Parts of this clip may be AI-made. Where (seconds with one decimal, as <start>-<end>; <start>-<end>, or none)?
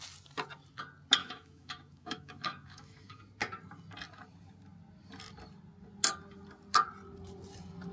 1.2-3.2